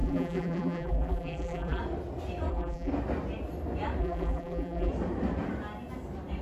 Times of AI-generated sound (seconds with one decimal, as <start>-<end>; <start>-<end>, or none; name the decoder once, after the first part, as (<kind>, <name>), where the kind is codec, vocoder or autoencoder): 0.0-1.8 (vocoder, BigVGAN v2); 2.5-2.9; 4.0-4.9